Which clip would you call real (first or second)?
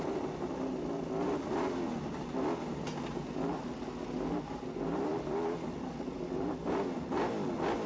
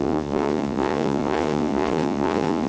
first